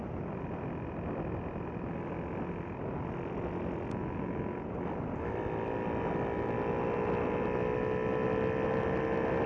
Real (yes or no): yes